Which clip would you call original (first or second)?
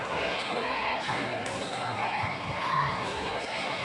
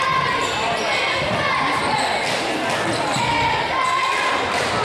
second